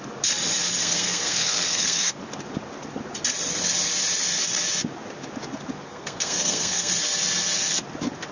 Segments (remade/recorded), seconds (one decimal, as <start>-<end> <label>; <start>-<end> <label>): 0.0-0.8 recorded; 0.8-2.2 remade; 2.2-5.9 recorded; 5.9-6.9 remade; 6.9-8.3 recorded